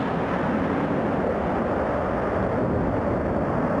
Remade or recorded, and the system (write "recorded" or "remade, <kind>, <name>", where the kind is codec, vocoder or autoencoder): recorded